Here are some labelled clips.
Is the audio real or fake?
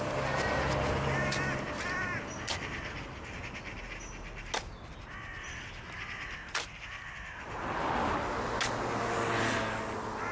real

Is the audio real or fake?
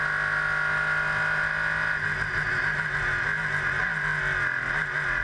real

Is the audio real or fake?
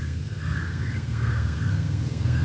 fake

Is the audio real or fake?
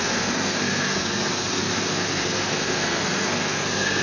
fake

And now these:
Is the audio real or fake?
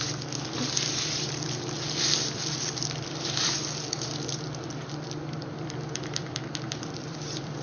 fake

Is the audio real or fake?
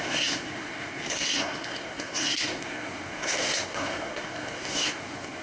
fake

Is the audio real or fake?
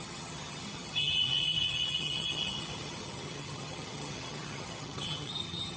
fake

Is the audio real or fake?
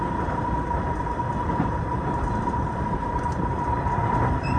fake